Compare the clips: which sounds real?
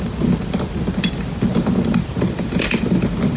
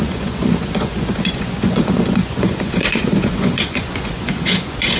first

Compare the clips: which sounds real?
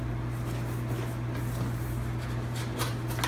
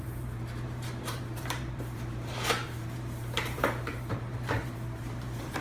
first